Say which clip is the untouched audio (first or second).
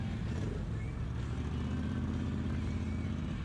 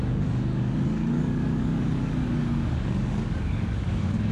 first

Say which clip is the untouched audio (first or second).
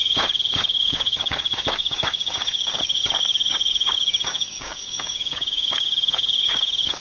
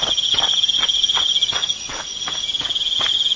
second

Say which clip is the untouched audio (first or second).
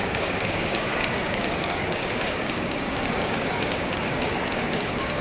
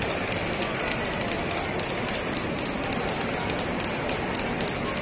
second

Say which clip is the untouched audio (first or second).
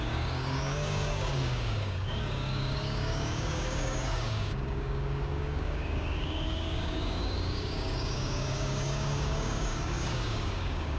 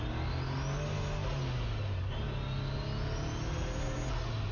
second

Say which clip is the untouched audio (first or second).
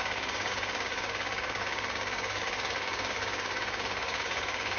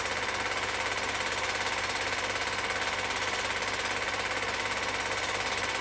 second